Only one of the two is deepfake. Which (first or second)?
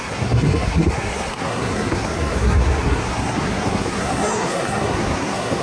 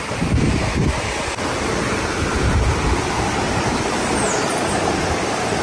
first